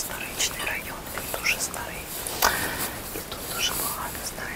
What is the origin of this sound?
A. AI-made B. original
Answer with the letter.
B